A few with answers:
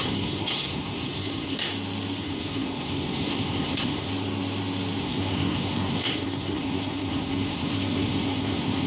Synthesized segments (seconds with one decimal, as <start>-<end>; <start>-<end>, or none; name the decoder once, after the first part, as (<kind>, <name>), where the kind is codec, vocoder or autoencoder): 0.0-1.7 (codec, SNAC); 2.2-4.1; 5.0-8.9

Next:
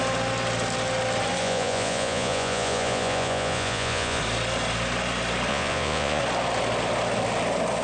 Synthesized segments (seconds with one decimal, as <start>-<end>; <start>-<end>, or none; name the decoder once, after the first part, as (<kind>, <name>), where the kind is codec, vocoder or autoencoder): 1.4-4.2 (vocoder, Vocos); 5.5-6.2

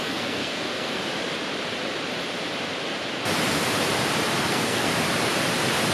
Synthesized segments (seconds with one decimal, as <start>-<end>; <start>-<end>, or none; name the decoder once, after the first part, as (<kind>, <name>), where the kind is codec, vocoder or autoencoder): 0.0-1.0 (codec, SNAC); 4.5-4.9